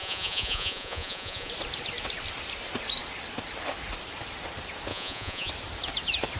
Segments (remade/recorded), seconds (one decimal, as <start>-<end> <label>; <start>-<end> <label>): 0.0-1.5 remade; 1.5-4.9 recorded; 4.9-5.5 remade; 5.5-6.4 recorded